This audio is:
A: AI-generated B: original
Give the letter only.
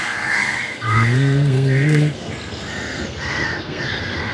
A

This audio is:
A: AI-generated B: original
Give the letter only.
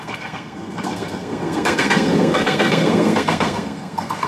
A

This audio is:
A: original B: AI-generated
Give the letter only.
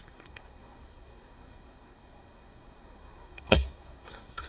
B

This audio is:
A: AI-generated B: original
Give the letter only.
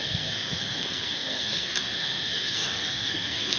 A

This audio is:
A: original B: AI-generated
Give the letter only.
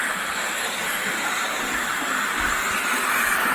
A